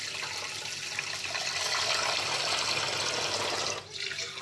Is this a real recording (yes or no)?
yes